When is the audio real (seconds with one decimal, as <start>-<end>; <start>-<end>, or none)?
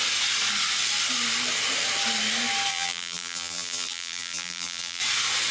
0.0-2.7; 5.0-5.5